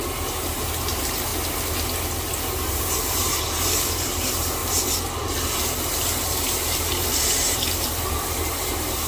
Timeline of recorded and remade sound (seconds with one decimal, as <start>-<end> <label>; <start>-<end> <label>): 0.0-1.3 remade; 1.3-2.7 recorded; 2.7-9.1 remade